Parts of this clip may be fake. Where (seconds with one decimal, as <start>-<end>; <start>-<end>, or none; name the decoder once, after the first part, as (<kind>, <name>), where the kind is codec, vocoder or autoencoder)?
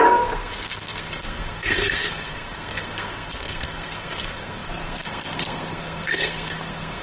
0.0-7.0 (codec, SNAC)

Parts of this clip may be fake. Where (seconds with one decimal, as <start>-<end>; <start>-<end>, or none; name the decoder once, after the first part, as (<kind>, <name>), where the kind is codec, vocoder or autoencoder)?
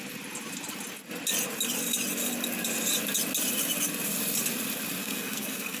5.0-5.8 (codec, SNAC)